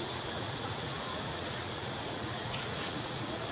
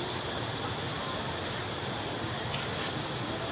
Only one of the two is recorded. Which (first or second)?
second